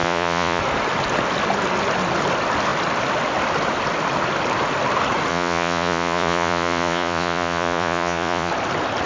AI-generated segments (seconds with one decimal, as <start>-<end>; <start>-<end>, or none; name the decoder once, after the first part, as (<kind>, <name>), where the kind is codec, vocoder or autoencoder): 0.0-0.6 (vocoder, Vocos); 5.3-8.5